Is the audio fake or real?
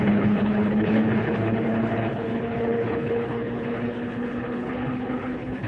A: fake